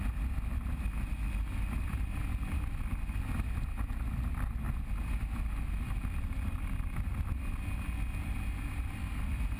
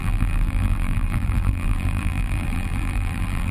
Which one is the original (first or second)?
first